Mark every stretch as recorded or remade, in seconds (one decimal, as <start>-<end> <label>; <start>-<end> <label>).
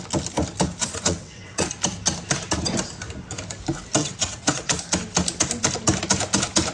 0.0-0.8 recorded; 0.8-1.7 remade; 1.7-4.0 recorded; 4.0-4.8 remade; 4.8-6.7 recorded